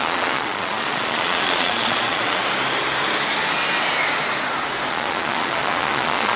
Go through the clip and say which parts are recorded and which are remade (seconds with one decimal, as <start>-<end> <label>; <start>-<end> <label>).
0.0-2.4 remade; 2.4-4.9 recorded; 4.9-6.4 remade